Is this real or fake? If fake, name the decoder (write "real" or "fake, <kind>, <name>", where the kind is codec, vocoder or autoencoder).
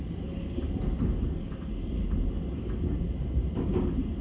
real